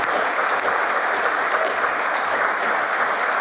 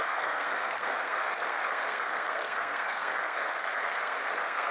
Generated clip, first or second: second